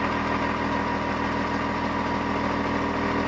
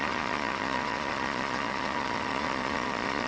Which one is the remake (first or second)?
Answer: second